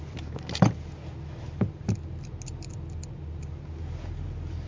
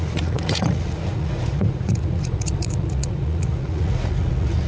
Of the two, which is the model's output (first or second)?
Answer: second